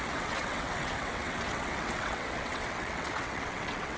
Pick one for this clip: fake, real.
fake